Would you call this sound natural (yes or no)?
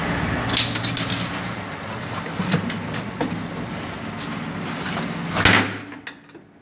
yes